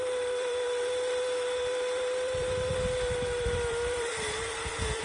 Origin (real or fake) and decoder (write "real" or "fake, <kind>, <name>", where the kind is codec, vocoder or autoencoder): fake, vocoder, BigVGAN v2